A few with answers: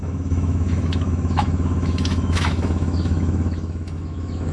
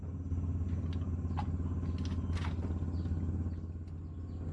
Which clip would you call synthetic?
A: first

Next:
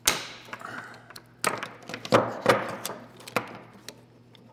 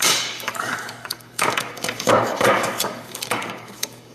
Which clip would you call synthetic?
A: second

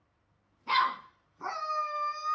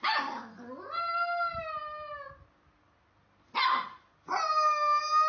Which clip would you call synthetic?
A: first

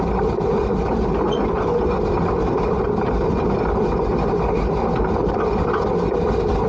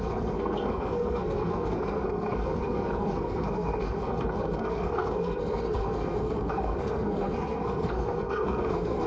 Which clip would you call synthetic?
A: second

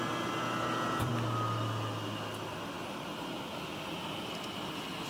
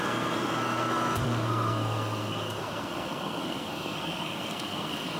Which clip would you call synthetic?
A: second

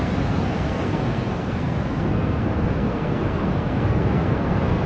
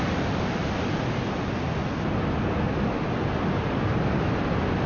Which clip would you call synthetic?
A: first